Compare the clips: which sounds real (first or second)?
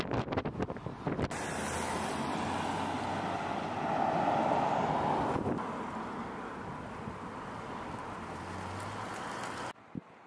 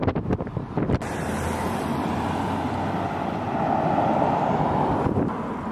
first